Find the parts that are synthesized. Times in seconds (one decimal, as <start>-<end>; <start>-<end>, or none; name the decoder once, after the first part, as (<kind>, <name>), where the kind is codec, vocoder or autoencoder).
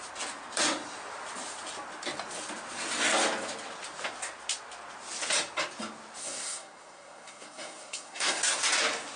6.2-8.4 (codec, SNAC)